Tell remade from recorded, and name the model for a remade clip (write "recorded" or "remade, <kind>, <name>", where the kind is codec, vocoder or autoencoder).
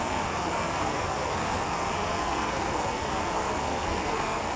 remade, codec, SNAC